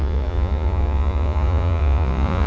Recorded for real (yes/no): no